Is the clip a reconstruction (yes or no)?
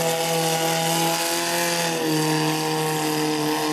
no